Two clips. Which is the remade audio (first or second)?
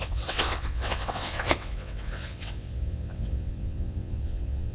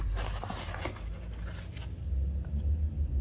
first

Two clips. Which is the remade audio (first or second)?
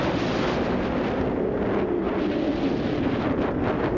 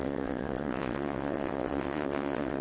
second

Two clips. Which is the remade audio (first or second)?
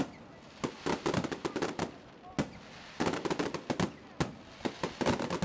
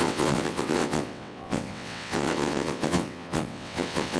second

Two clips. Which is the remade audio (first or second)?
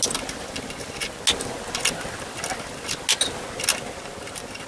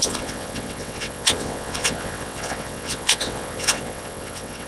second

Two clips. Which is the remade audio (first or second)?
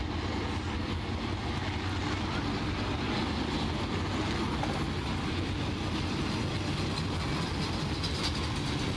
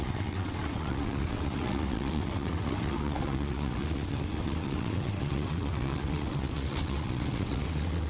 second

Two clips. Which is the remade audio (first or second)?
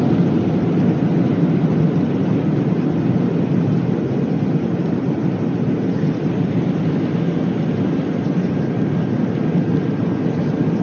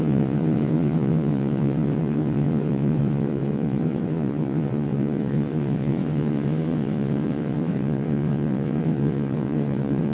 second